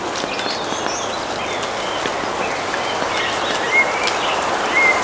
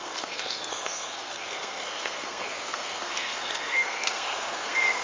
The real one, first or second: first